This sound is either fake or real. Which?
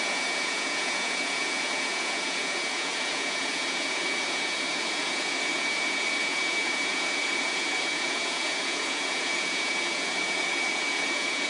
fake